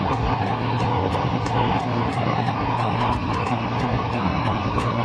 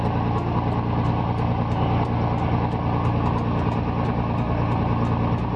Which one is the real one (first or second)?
second